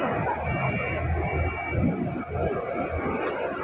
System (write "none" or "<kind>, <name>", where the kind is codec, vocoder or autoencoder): none